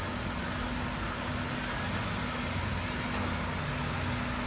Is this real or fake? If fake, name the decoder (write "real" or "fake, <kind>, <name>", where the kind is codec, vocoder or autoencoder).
real